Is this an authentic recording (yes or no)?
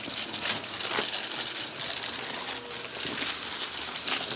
yes